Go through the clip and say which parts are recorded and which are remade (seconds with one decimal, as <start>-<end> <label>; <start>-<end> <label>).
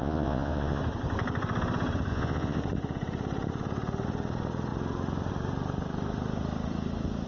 0.0-0.8 remade; 0.8-2.1 recorded; 2.1-2.6 remade; 2.6-7.3 recorded